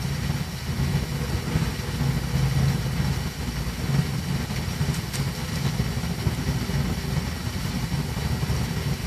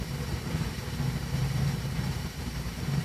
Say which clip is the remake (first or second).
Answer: second